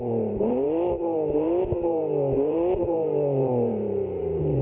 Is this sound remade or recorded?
remade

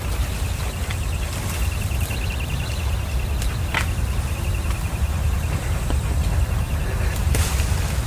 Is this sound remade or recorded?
recorded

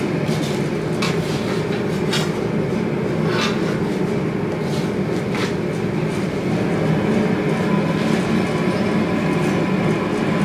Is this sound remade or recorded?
recorded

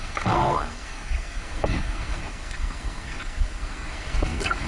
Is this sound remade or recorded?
remade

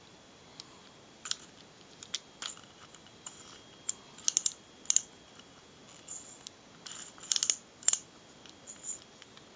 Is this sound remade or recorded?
recorded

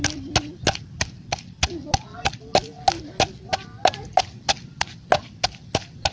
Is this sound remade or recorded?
recorded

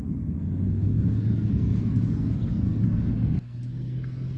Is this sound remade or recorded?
remade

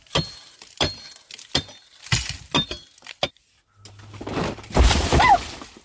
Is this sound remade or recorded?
recorded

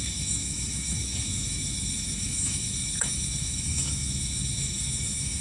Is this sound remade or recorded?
remade